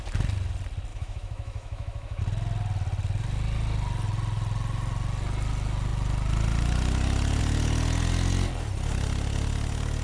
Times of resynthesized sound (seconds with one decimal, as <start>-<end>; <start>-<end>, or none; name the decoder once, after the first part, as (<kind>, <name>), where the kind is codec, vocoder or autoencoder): 0.9-2.2 (autoencoder, DAC-VAE)